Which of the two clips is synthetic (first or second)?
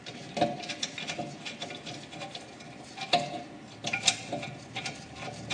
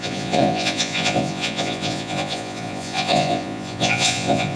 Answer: second